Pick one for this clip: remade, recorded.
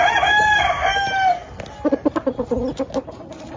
recorded